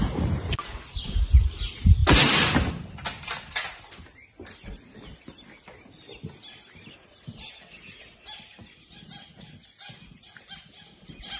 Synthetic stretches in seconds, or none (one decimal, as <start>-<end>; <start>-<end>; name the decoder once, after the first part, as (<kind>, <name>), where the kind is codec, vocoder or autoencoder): none